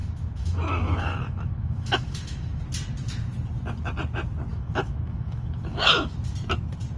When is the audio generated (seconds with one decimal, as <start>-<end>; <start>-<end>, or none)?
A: 0.0-2.6; 4.5-6.1

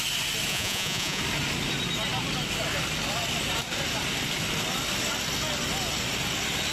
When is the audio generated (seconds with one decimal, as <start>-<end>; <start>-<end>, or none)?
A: 0.5-1.2

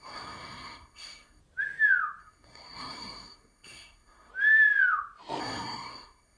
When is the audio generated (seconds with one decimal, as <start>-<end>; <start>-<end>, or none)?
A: 0.0-1.4; 2.2-4.3; 5.4-6.4